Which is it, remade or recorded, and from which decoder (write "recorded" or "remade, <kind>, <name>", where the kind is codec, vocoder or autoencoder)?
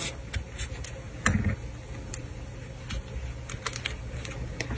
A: recorded